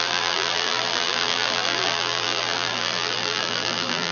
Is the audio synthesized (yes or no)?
yes